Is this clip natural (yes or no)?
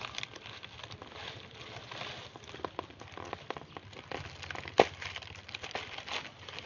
yes